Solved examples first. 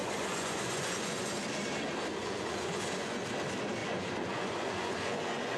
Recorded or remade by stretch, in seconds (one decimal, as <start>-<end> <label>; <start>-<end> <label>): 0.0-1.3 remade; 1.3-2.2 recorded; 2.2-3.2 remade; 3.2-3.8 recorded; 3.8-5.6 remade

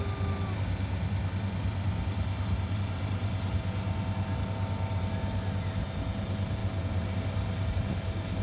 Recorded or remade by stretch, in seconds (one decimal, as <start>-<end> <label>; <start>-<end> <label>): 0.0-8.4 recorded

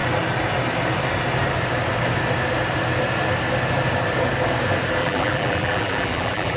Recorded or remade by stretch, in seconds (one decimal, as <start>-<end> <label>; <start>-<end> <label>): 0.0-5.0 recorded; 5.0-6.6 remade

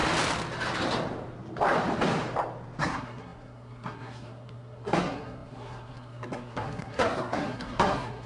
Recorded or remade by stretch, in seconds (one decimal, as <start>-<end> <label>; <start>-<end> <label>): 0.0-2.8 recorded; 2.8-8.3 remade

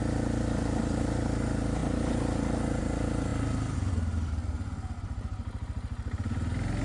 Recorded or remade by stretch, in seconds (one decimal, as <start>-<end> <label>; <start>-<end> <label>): 0.0-6.8 recorded

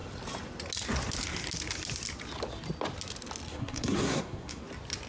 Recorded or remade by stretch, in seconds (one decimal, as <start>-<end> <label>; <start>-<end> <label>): 0.0-3.5 recorded; 3.5-4.6 remade; 4.6-5.1 recorded

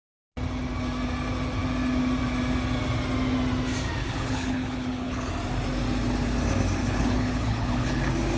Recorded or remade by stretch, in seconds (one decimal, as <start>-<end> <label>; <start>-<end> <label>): 0.0-4.0 recorded; 4.0-5.3 remade; 5.3-6.8 recorded; 6.8-8.0 remade; 8.0-8.4 recorded

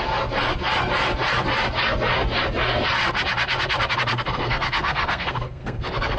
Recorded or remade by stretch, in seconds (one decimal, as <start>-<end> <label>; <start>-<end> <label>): 0.0-4.1 recorded; 4.1-6.2 remade